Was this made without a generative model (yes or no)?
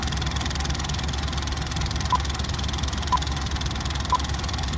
yes